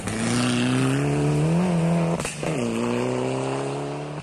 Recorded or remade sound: recorded